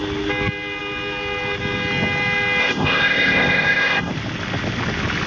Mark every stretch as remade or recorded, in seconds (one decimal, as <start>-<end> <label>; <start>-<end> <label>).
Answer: 0.0-2.6 recorded; 2.6-4.1 remade; 4.1-5.3 recorded